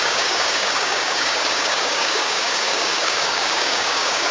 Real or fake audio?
fake